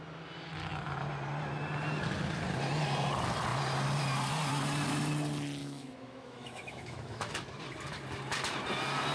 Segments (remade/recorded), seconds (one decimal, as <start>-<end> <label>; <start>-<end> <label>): 0.0-5.6 recorded; 5.6-7.3 remade; 7.3-9.1 recorded